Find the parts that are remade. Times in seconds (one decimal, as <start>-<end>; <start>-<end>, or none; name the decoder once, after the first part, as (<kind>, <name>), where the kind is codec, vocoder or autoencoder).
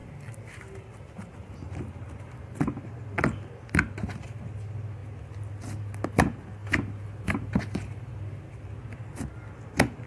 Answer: 0.0-0.6 (vocoder, BigVGAN v2); 6.6-8.5